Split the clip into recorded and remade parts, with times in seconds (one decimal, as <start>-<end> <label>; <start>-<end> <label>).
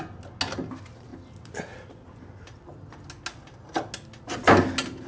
0.0-5.1 recorded